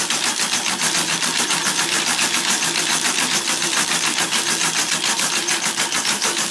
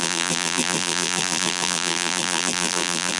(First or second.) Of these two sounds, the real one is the first